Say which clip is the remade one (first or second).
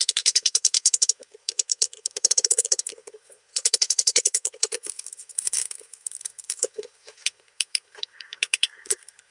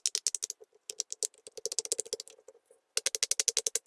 first